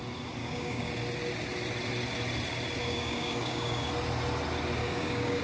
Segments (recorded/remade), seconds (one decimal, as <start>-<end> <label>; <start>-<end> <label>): 0.0-0.4 recorded; 0.4-0.9 remade; 0.9-2.8 recorded; 2.8-3.9 remade; 3.9-4.8 recorded; 4.8-5.4 remade

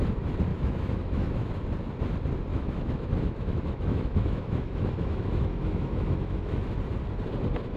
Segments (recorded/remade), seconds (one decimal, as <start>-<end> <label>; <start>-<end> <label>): 0.0-0.5 recorded; 0.5-1.5 remade; 1.5-2.5 recorded; 2.5-6.8 remade; 6.8-7.8 recorded

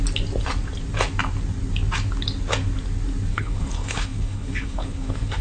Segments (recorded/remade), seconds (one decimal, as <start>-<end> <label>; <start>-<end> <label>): 0.0-3.3 recorded; 3.3-5.4 remade

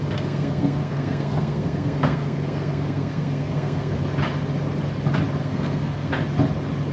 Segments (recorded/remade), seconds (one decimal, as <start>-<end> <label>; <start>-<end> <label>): 0.0-4.0 remade; 4.0-5.4 recorded; 5.4-6.1 remade; 6.1-6.9 recorded

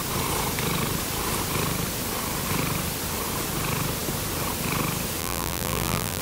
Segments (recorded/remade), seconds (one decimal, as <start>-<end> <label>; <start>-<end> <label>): 0.0-5.2 recorded; 5.2-6.2 remade